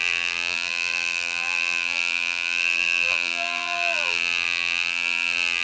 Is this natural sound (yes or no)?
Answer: no